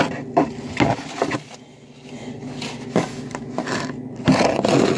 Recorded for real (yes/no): yes